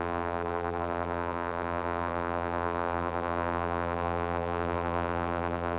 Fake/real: fake